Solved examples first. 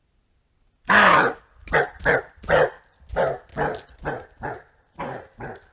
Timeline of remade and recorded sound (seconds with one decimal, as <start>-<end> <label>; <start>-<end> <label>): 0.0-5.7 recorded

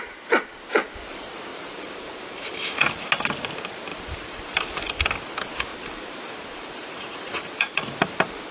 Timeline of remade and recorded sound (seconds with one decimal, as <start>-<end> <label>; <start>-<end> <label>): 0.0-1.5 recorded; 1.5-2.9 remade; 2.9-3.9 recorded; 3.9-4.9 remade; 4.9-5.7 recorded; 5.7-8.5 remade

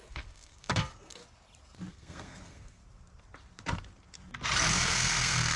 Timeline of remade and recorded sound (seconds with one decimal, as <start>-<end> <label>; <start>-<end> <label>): 0.0-1.2 remade; 1.2-1.9 recorded; 1.9-2.8 remade; 2.8-4.7 recorded; 4.7-5.6 remade

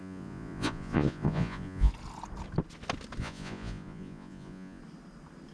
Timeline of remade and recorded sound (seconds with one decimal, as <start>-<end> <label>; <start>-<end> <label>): 0.0-1.9 remade; 1.9-3.2 recorded; 3.2-4.8 remade; 4.8-5.5 recorded

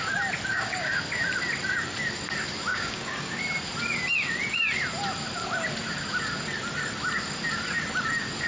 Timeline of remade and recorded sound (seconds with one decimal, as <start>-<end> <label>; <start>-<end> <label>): 0.0-0.5 recorded; 0.5-1.0 remade; 1.0-2.7 recorded; 2.7-3.4 remade; 3.4-8.5 recorded